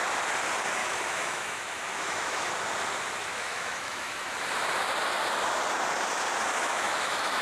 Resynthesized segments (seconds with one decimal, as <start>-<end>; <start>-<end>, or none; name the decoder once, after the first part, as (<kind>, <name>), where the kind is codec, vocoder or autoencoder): 0.8-2.5 (autoencoder, DAC-VAE); 3.2-4.3; 6.5-7.4